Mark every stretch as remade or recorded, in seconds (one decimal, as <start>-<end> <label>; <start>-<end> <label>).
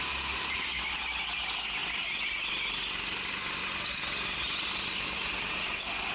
0.0-6.1 recorded